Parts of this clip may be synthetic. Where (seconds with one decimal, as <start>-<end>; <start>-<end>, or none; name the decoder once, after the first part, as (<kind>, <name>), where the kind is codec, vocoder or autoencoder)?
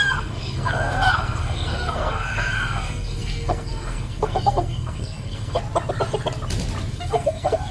0.0-5.6 (codec, SNAC); 6.9-7.7